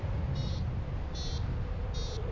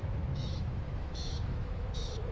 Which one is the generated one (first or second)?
second